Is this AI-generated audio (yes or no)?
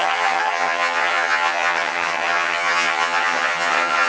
yes